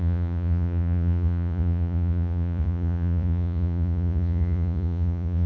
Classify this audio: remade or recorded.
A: remade